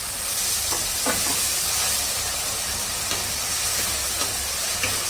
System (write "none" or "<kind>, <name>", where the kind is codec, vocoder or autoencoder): none